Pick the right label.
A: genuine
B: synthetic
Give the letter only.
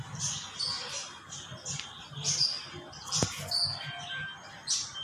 A